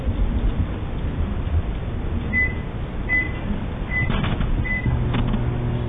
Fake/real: real